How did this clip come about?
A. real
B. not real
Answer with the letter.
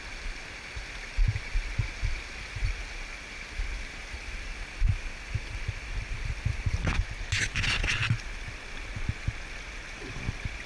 A